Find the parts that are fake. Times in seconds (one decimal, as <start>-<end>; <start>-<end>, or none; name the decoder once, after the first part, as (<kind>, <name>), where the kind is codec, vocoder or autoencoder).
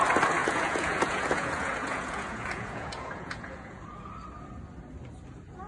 0.4-3.8 (vocoder, Vocos)